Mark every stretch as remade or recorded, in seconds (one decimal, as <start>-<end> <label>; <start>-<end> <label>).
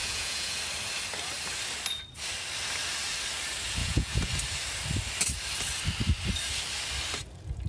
0.0-0.6 remade; 0.6-3.8 recorded; 3.8-4.3 remade; 4.3-7.7 recorded